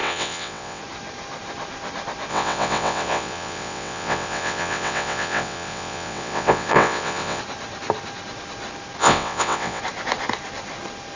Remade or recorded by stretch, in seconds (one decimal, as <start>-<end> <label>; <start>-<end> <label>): 0.0-0.8 remade; 0.8-2.3 recorded; 2.3-7.4 remade; 7.4-9.0 recorded; 9.0-9.8 remade; 9.8-11.2 recorded

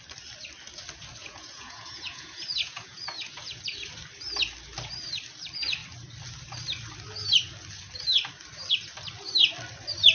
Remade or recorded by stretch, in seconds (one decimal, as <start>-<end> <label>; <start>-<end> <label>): 0.0-1.2 recorded; 1.2-3.6 remade; 3.6-10.1 recorded

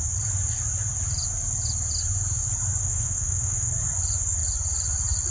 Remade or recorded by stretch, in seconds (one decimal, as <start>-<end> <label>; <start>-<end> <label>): 0.0-2.8 recorded; 2.8-3.7 remade; 3.7-5.3 recorded

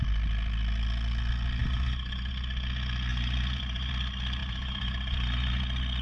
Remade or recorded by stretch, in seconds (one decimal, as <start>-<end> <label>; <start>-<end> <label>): 0.0-1.6 recorded; 1.6-2.3 remade; 2.3-3.1 recorded; 3.1-3.9 remade; 3.9-4.4 recorded; 4.4-5.6 remade; 5.6-6.0 recorded

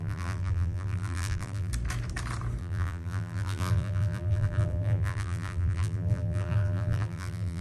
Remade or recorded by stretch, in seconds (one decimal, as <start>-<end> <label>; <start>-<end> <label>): 0.0-1.7 remade; 1.7-2.6 recorded; 2.6-7.6 remade

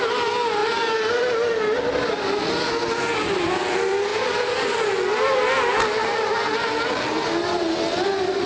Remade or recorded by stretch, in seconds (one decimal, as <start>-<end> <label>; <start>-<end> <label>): 0.0-8.5 recorded

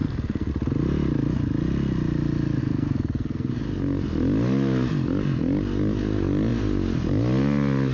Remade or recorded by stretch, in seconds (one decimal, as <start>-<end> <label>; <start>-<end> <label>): 0.0-0.5 remade; 0.5-2.6 recorded; 2.6-3.5 remade; 3.5-7.9 recorded

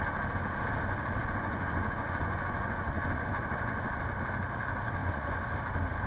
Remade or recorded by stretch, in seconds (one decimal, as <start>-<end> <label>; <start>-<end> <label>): 0.0-1.2 recorded; 1.2-4.0 remade; 4.0-5.0 recorded; 5.0-5.5 remade; 5.5-6.1 recorded